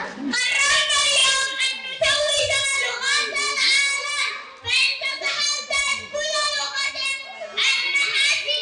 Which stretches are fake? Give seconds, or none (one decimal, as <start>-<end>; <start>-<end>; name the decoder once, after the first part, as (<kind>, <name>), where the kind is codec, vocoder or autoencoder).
none

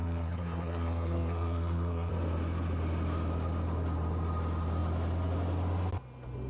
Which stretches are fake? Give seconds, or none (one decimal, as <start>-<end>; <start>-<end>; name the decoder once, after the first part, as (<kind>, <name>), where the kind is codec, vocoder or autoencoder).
0.0-2.1 (codec, SNAC)

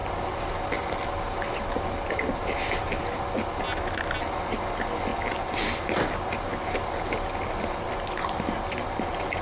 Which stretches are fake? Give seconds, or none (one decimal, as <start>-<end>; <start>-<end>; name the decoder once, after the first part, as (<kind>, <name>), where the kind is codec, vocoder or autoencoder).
none

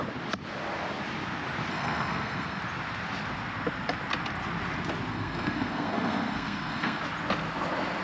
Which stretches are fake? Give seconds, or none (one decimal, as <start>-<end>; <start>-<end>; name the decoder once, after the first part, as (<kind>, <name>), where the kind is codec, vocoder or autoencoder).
1.7-2.6 (codec, SNAC); 5.1-7.0

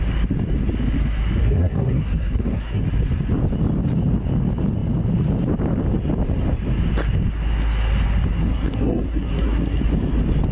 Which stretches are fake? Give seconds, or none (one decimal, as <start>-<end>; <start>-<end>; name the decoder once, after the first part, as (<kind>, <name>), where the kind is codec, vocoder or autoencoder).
1.4-2.8 (codec, SNAC); 8.3-9.8